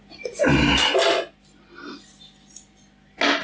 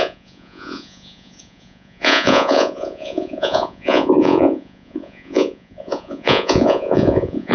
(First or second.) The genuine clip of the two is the first